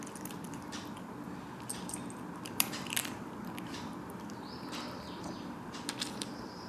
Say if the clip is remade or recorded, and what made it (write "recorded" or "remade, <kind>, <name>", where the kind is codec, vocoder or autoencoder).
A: remade, vocoder, BigVGAN v2